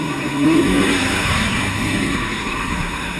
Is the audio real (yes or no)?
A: no